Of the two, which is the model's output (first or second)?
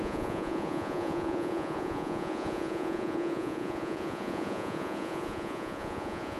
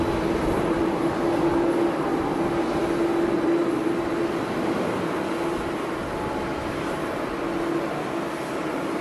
first